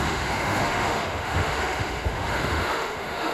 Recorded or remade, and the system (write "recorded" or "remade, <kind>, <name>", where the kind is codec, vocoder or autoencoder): remade, autoencoder, DAC-VAE